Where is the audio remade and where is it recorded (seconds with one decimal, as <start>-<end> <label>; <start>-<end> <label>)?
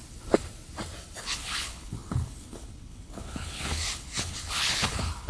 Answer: 0.0-1.2 recorded; 1.2-5.3 remade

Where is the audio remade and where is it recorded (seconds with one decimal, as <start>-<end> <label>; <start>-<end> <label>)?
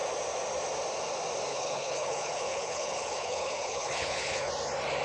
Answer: 0.0-1.5 recorded; 1.5-4.5 remade; 4.5-5.0 recorded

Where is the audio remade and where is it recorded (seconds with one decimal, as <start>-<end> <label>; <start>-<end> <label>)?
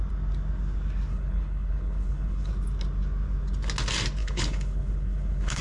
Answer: 0.0-1.1 recorded; 1.1-2.5 remade; 2.5-4.2 recorded; 4.2-5.6 remade